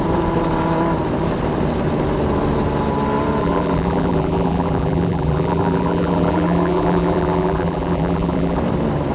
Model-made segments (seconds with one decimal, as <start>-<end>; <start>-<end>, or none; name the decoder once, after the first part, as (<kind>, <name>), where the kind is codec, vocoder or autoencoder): 3.4-8.6 (vocoder, BigVGAN v2)